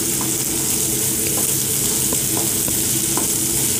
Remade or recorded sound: recorded